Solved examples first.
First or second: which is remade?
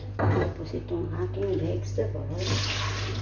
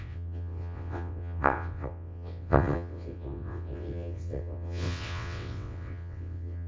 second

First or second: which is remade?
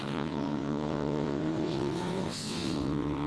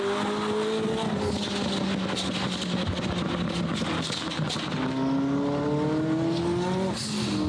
first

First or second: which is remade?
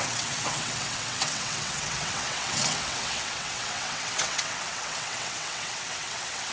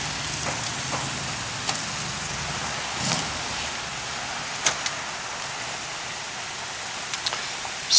first